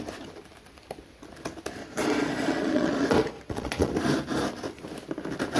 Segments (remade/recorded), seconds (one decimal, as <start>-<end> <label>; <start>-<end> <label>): 0.0-1.8 recorded; 1.8-3.9 remade; 3.9-5.6 recorded